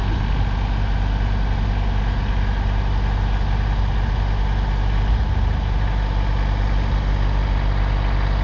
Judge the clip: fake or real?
real